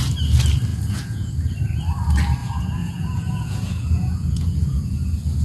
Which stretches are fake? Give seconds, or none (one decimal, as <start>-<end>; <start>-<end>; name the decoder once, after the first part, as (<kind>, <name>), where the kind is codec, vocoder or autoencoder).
0.7-1.3 (vocoder, Vocos); 2.4-4.8